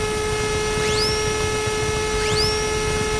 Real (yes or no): yes